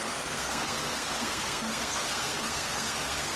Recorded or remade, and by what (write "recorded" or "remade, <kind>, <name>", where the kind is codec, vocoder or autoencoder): remade, codec, SNAC